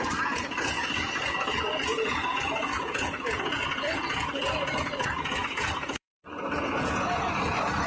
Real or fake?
fake